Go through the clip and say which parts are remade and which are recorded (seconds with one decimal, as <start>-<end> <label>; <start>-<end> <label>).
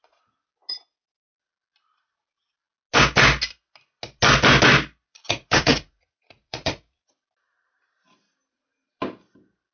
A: 0.0-5.1 recorded; 5.1-7.1 remade; 7.1-9.7 recorded